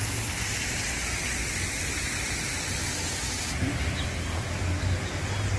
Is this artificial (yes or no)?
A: no